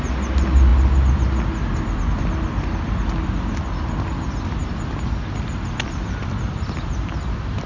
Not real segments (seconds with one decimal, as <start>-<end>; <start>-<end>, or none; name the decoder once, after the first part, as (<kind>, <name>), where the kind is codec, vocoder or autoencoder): none